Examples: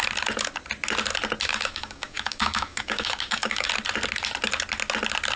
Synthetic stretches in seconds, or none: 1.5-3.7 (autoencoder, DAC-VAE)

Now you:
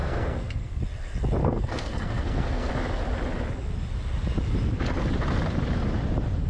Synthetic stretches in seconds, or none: 0.0-0.8 (codec, SNAC); 1.4-2.7

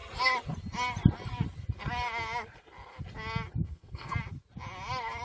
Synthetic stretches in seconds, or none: 3.6-4.1 (codec, SNAC)